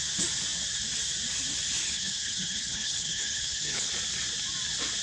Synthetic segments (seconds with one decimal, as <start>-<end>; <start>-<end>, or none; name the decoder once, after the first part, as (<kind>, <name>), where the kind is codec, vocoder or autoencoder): 1.8-3.9 (codec, HILCodec)